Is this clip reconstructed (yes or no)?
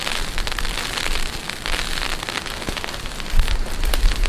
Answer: no